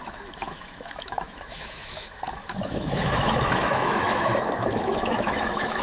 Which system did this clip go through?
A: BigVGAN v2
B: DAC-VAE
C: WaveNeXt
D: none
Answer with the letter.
B